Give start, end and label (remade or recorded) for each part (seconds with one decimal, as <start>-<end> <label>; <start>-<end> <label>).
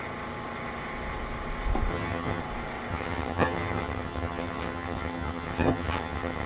0.0-1.9 recorded; 1.9-2.4 remade; 2.4-2.9 recorded; 2.9-6.5 remade